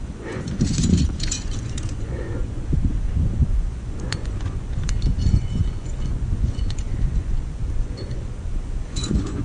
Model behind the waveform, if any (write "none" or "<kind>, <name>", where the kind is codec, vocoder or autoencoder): vocoder, Vocos